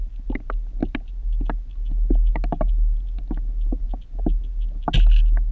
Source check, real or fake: real